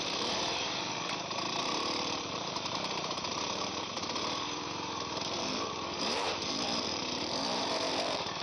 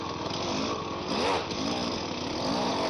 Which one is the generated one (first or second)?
first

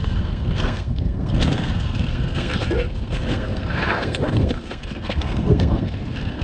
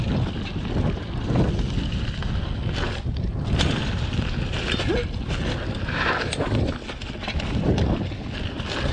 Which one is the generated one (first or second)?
first